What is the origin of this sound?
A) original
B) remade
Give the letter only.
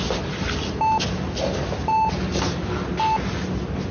A